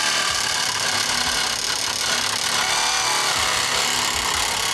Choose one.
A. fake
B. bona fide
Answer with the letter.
B